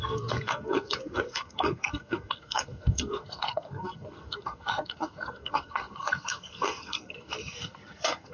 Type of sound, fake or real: fake